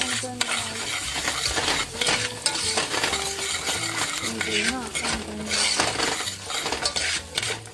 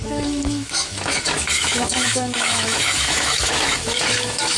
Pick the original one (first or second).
first